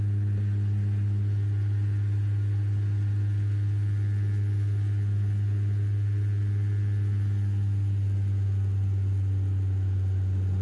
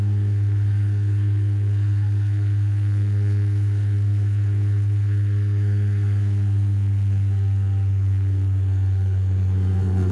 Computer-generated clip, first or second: second